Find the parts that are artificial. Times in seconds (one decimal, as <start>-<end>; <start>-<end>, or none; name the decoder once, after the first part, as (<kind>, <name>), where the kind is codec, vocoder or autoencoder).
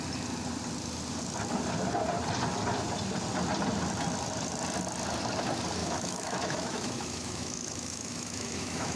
5.8-9.0 (autoencoder, DAC-VAE)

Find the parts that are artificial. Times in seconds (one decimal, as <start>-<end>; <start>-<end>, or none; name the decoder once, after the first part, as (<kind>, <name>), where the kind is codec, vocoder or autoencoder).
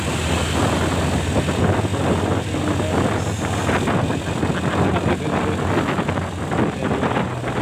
none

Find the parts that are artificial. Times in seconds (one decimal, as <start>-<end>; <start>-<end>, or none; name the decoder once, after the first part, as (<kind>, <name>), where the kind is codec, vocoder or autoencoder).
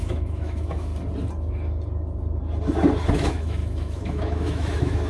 0.0-0.9 (autoencoder, DAC-VAE); 3.1-5.1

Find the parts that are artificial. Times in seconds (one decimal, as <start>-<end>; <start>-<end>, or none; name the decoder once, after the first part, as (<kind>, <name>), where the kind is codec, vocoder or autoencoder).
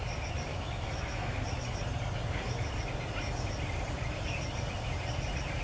0.5-1.4 (autoencoder, DAC-VAE)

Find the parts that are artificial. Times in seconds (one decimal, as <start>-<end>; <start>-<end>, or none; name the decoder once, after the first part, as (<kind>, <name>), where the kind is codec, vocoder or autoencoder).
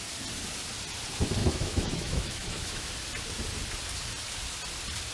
1.4-2.9 (autoencoder, DAC-VAE)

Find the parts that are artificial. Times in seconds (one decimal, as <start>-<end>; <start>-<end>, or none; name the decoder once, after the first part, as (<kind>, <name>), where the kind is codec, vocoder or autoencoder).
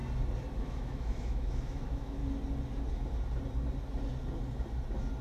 0.6-2.2 (autoencoder, DAC-VAE)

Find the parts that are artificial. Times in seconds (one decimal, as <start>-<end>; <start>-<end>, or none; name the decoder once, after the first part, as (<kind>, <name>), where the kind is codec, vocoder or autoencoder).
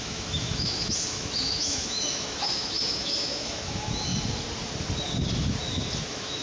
0.0-4.1 (autoencoder, DAC-VAE); 6.0-6.4